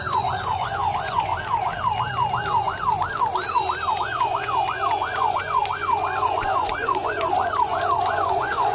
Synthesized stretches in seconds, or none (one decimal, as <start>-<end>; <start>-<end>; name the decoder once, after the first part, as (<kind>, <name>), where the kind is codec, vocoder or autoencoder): 0.0-1.3 (vocoder, Vocos); 3.9-8.7